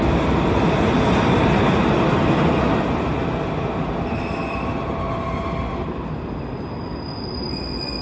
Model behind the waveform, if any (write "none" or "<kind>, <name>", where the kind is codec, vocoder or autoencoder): none